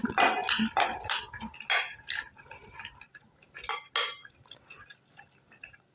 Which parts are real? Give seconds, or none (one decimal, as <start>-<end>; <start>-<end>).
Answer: 0.0-5.9